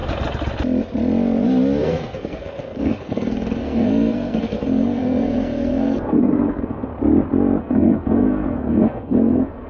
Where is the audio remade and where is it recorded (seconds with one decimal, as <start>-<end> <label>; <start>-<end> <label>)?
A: 0.0-1.8 recorded; 1.8-6.9 remade; 6.9-7.6 recorded; 7.6-9.7 remade